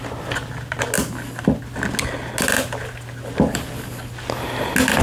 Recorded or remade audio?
recorded